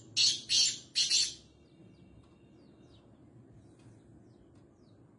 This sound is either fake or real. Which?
real